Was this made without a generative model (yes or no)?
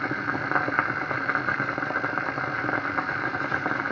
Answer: yes